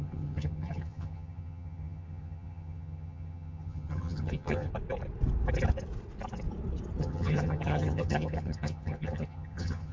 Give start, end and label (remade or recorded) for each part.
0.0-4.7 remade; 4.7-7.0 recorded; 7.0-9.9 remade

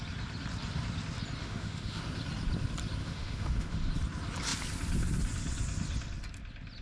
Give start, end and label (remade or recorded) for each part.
0.0-1.4 recorded; 1.4-2.0 remade; 2.0-3.0 recorded; 3.0-3.9 remade; 3.9-6.8 recorded

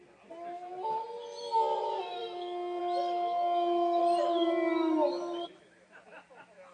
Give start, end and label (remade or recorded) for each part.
0.0-4.0 recorded; 4.0-6.3 remade; 6.3-6.7 recorded

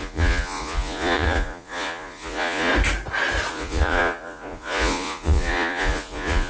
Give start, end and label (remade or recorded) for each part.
0.0-2.7 remade; 2.7-3.5 recorded; 3.5-6.5 remade

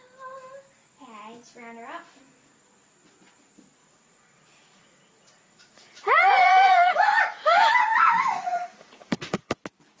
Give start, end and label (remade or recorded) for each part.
0.0-3.8 recorded; 3.8-7.0 remade; 7.0-8.3 recorded; 8.3-9.6 remade; 9.6-10.0 recorded

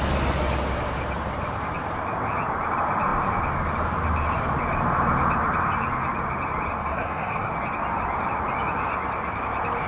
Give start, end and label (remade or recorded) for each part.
0.0-6.8 recorded; 6.8-7.5 remade; 7.5-9.9 recorded